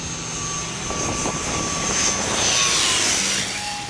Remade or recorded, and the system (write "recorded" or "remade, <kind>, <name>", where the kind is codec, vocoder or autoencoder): recorded